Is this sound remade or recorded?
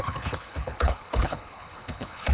remade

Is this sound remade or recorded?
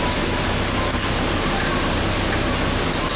recorded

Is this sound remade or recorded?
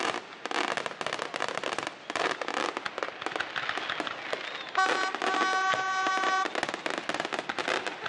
recorded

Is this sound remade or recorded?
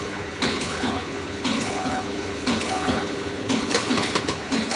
remade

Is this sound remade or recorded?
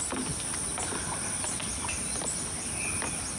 recorded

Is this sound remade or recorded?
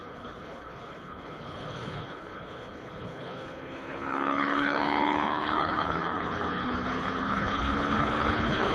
remade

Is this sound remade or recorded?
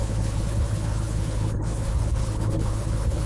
remade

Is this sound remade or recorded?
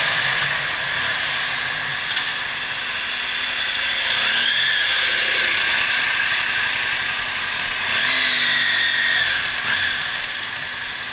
recorded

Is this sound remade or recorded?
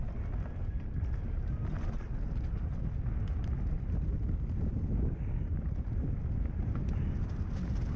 recorded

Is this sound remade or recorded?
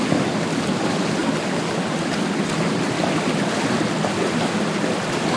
recorded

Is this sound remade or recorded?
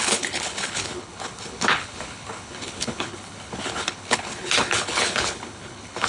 remade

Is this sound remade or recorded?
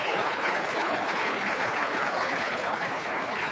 remade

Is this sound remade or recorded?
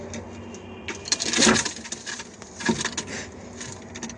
recorded